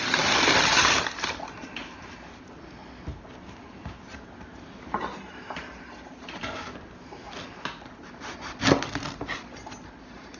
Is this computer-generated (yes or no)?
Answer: no